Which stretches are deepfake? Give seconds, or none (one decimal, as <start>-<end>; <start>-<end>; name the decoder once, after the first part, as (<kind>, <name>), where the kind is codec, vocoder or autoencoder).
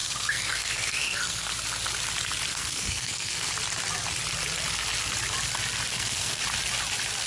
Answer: 0.0-1.5 (codec, SNAC); 2.5-3.5; 5.9-6.4